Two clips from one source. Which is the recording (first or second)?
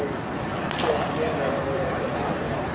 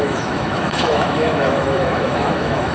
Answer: first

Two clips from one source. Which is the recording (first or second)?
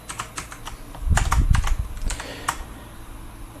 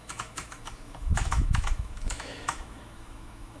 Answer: first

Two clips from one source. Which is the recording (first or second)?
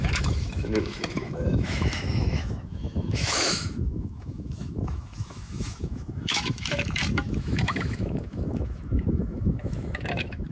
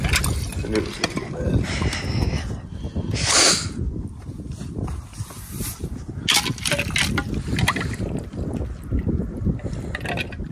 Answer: second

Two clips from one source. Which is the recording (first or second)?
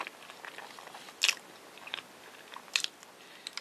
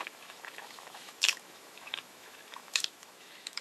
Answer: first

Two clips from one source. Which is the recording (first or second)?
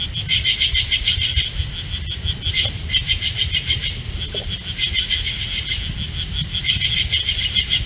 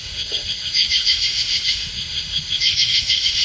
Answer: first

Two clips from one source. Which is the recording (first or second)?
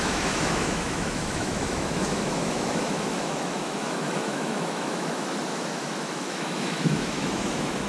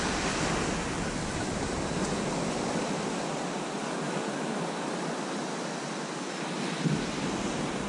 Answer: second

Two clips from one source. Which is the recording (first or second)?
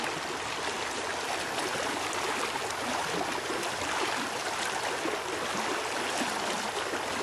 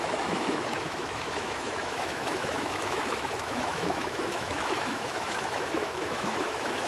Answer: first